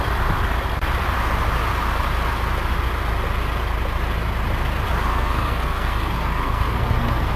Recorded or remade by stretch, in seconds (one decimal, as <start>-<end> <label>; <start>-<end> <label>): 0.0-5.1 recorded; 5.1-7.4 remade